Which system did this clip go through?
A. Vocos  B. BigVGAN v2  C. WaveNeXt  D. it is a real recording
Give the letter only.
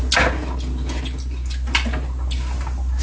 D